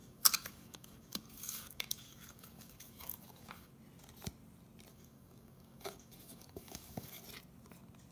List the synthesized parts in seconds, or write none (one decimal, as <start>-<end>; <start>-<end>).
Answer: 0.0-3.7; 4.9-7.2